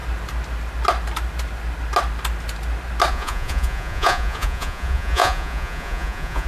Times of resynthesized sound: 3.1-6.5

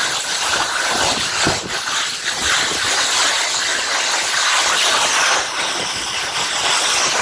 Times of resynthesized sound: none

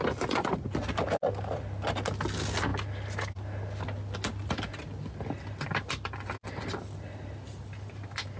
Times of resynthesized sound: none

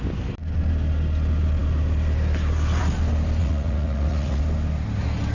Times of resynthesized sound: 3.4-4.4

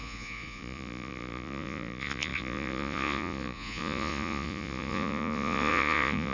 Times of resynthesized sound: 0.0-6.3